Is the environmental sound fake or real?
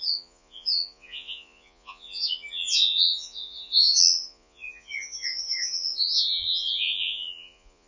fake